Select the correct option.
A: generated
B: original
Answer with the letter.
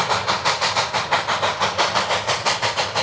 A